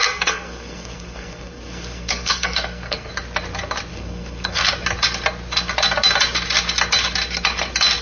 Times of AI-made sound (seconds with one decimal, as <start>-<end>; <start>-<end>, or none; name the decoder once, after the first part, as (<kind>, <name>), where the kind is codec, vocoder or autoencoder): 0.0-3.1 (codec, SNAC); 3.9-4.7